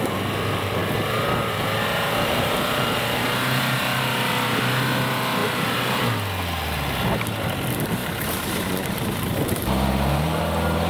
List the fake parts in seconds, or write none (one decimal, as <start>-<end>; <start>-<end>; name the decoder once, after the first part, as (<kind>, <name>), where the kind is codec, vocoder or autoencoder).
0.8-4.3 (vocoder, BigVGAN v2); 8.0-10.4